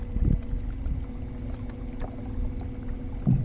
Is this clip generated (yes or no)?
no